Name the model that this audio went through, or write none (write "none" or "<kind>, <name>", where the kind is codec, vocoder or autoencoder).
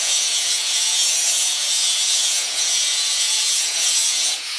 vocoder, Vocos